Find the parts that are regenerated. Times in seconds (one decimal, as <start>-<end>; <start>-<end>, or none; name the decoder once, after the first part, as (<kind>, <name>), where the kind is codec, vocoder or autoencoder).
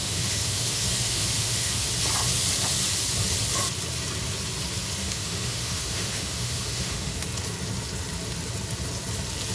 0.0-1.9 (autoencoder, DAC-VAE); 5.0-7.2